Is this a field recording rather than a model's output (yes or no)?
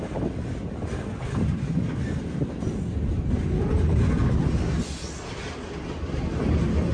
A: yes